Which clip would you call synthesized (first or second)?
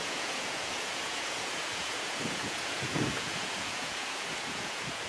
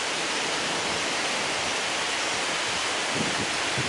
first